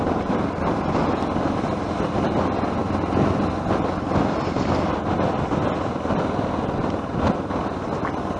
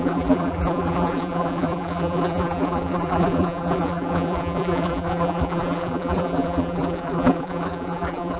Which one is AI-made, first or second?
second